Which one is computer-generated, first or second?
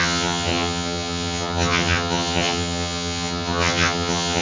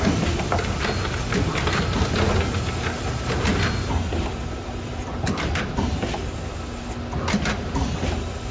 first